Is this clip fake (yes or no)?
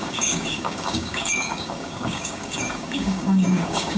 yes